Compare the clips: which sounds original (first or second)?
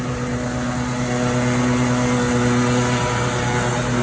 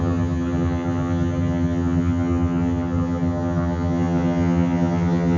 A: first